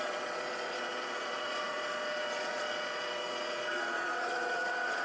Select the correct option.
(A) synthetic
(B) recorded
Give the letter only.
A